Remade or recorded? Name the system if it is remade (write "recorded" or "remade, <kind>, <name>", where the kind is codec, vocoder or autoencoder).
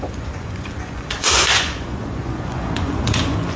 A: remade, vocoder, Vocos